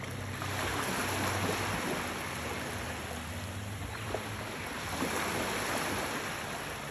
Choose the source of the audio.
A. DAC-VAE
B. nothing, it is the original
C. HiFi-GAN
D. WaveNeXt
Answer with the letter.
B